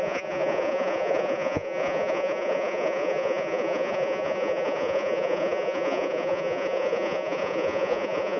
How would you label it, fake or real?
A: fake